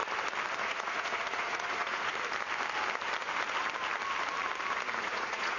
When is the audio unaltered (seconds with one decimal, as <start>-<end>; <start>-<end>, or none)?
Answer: 0.0-0.6; 2.1-5.0